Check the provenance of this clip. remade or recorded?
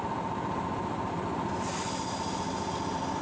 recorded